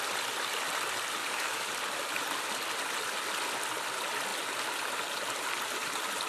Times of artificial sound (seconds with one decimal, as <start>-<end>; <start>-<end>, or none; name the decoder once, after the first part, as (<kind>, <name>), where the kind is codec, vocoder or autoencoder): 1.2-1.7 (codec, DAC)